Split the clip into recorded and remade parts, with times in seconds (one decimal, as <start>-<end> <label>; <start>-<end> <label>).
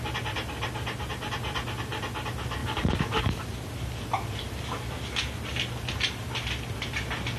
0.0-2.6 recorded; 2.6-3.4 remade; 3.4-7.4 recorded